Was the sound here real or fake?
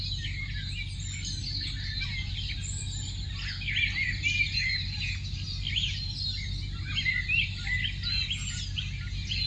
real